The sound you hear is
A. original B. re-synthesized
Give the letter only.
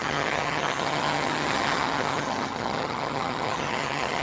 B